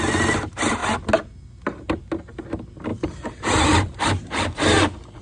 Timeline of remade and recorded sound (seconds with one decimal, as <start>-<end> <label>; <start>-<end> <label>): 0.0-2.9 recorded; 2.9-4.4 remade; 4.4-5.2 recorded